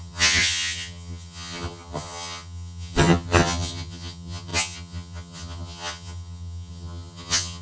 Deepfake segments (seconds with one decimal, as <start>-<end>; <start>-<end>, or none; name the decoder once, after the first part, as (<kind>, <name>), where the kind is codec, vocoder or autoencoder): 0.0-7.6 (vocoder, HiFi-GAN)